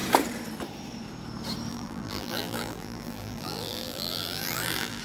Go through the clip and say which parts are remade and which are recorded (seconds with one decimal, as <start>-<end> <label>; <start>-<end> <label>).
0.0-1.7 recorded; 1.7-5.0 remade